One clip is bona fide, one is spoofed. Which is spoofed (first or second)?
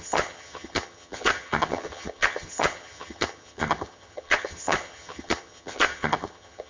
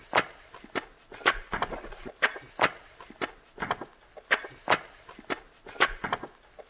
first